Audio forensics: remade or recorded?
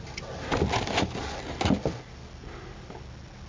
recorded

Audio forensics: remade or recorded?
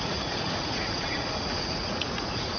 remade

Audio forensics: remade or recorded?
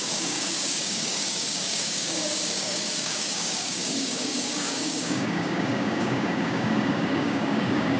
remade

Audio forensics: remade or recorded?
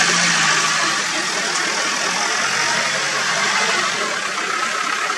recorded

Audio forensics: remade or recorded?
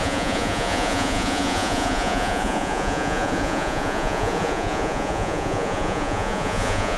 remade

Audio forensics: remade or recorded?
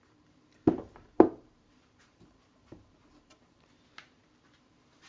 remade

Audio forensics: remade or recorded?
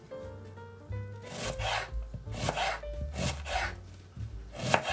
recorded